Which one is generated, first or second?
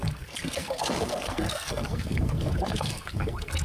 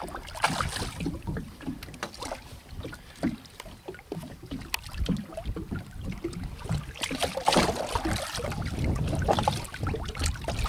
first